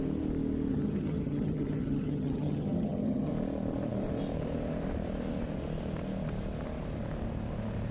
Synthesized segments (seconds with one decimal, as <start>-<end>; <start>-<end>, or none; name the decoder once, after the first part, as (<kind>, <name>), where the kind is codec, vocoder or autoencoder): 0.7-3.3 (vocoder, HiFi-GAN)